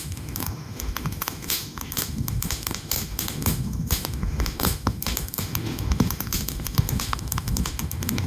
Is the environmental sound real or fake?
fake